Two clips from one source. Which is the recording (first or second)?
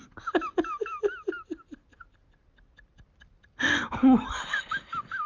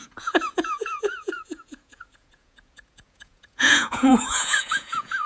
first